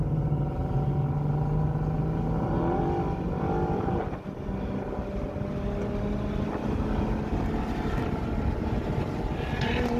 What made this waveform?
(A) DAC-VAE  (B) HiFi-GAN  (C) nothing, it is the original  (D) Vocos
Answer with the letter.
C